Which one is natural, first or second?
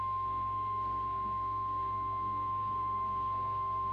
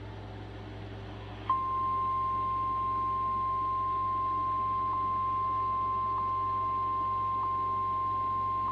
second